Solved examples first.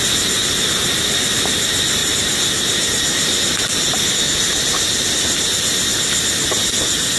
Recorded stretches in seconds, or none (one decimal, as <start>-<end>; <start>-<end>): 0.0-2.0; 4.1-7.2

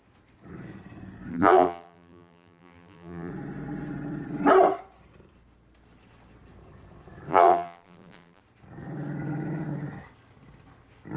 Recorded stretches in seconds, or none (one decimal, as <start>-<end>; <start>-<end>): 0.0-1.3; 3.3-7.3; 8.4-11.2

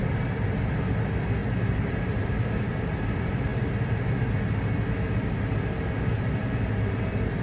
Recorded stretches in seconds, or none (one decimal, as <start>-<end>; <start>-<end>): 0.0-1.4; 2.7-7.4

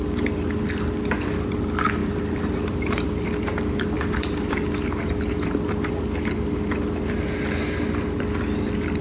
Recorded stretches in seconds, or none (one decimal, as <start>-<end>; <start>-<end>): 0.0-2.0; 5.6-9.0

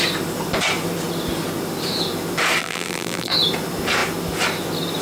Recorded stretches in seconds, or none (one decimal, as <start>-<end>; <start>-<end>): 0.0-2.6; 3.3-5.0

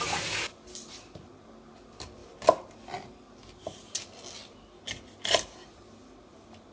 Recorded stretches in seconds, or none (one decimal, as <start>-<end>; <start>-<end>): 0.0-6.7

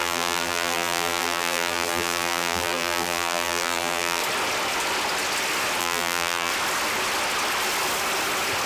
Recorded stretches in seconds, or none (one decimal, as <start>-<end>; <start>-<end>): 4.2-5.8; 6.5-8.7

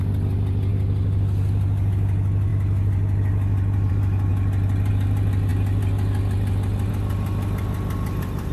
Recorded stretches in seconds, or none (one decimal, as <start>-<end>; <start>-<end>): 0.0-0.7; 1.9-2.5; 3.9-8.5